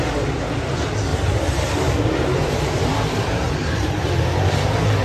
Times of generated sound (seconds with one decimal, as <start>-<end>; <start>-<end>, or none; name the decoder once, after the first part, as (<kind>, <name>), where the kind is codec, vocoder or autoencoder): 1.1-4.1 (vocoder, BigVGAN v2)

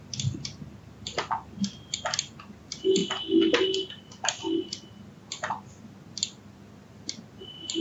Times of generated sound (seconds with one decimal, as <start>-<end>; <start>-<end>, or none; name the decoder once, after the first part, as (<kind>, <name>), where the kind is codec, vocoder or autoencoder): none

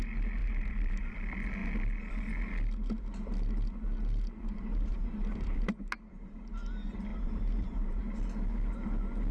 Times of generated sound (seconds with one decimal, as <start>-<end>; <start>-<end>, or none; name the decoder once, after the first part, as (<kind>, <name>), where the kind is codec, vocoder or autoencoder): 0.4-1.1 (vocoder, BigVGAN v2); 4.7-5.9; 7.1-8.0

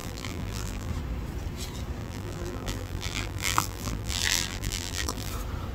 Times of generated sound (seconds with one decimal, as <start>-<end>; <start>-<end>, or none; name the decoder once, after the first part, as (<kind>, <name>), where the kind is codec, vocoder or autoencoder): 0.0-0.9 (vocoder, BigVGAN v2); 2.0-5.3

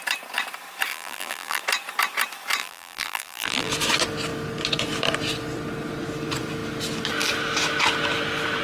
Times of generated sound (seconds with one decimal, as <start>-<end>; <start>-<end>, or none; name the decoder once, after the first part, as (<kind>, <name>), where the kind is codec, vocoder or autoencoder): 0.9-1.6 (vocoder, BigVGAN v2); 2.6-3.7

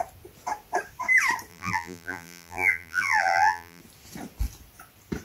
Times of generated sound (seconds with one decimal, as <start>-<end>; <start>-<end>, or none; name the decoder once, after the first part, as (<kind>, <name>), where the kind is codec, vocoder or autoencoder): 1.5-3.8 (vocoder, BigVGAN v2)

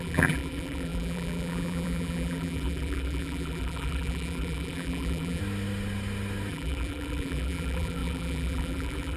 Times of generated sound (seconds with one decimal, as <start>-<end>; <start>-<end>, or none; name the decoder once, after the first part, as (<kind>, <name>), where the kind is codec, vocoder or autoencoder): 0.0-5.4 (vocoder, BigVGAN v2); 6.5-9.2

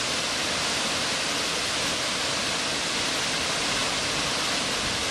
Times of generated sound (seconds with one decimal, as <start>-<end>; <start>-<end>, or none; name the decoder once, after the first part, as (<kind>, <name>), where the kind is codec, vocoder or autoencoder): 0.0-3.8 (vocoder, BigVGAN v2); 4.3-5.1